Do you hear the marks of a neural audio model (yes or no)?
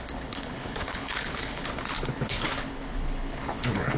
yes